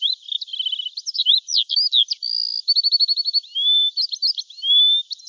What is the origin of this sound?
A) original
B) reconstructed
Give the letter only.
A